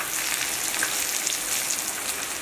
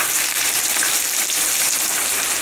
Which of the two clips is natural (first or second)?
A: first